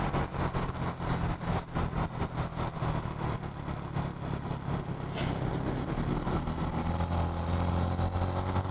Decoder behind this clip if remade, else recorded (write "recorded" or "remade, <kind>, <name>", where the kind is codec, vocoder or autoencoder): recorded